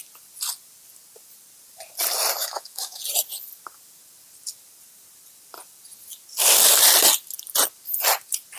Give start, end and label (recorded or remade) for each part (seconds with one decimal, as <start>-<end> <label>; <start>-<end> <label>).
0.0-2.4 recorded; 2.4-3.0 remade; 3.0-8.6 recorded